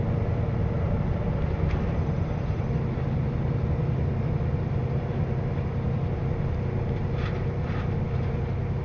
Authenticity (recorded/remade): recorded